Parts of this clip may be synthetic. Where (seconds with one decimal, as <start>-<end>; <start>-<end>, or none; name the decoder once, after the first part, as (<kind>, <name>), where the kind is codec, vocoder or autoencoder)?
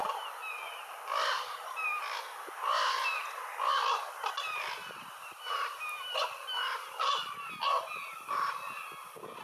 4.8-5.8 (vocoder, BigVGAN v2)